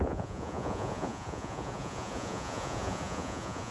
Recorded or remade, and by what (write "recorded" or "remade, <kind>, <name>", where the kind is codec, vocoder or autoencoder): remade, vocoder, Vocos